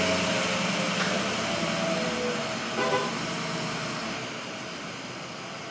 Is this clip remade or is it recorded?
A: recorded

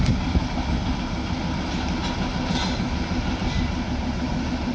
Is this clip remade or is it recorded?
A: recorded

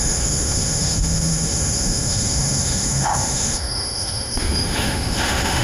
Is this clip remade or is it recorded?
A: remade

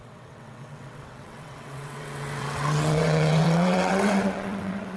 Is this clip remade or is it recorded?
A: remade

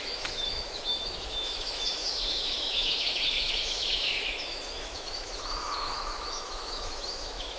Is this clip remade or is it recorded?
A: remade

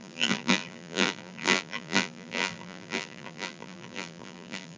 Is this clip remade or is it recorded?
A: remade